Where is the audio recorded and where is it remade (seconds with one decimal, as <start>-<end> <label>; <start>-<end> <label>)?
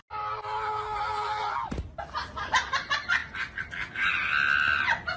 0.0-5.2 recorded